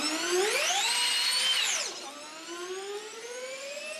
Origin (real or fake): real